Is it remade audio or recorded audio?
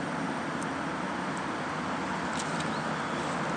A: recorded